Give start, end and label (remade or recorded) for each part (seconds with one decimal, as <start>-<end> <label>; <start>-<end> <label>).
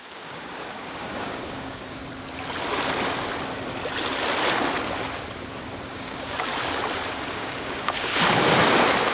0.0-2.0 remade; 2.0-5.9 recorded; 5.9-6.5 remade; 6.5-7.3 recorded; 7.3-8.1 remade; 8.1-9.1 recorded